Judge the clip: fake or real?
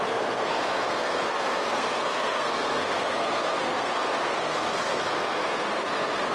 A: fake